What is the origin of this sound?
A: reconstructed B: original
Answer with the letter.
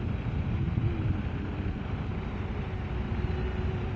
B